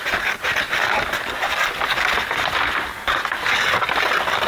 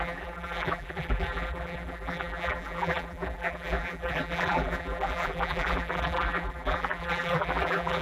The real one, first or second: first